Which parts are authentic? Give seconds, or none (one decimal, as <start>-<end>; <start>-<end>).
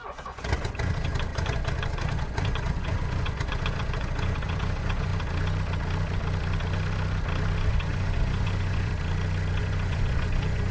5.1-7.7; 8.9-9.6